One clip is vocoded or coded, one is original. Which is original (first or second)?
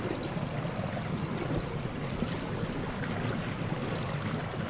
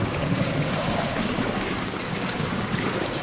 first